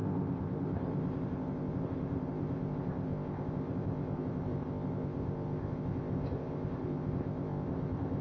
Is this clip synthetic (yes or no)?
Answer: yes